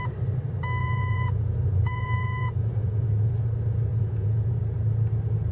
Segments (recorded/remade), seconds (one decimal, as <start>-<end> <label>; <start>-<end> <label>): 0.0-0.8 recorded; 0.8-3.3 remade; 3.3-3.9 recorded; 3.9-4.6 remade; 4.6-5.5 recorded